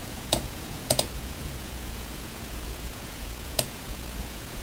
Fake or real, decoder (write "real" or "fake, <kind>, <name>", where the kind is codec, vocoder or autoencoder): fake, vocoder, Vocos